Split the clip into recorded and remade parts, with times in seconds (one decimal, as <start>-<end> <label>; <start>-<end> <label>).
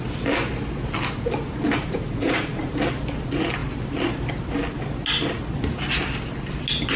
0.0-1.8 recorded; 1.8-2.7 remade; 2.7-7.0 recorded